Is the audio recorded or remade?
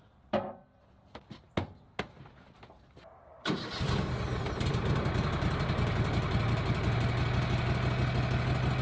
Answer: recorded